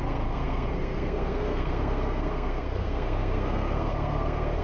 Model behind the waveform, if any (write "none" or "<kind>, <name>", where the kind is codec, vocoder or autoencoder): codec, SNAC